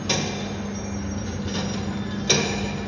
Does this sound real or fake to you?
real